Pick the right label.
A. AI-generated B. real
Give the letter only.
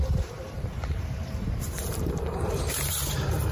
A